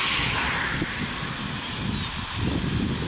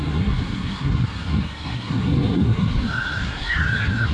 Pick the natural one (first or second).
first